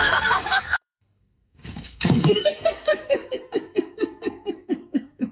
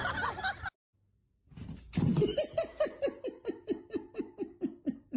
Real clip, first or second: second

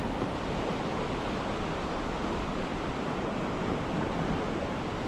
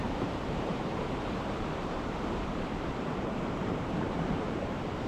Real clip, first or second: first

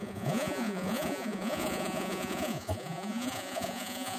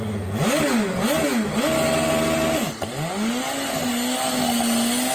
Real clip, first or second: second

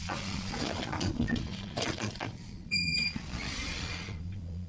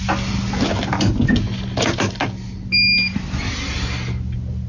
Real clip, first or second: second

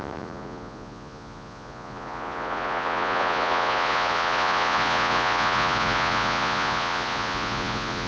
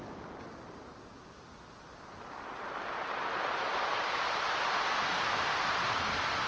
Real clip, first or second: second